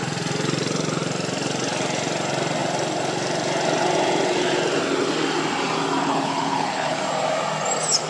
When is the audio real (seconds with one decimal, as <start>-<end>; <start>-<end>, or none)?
0.0-6.0; 7.0-8.1